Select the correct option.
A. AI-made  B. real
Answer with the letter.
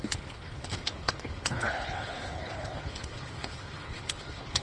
A